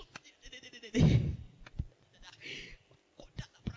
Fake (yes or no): no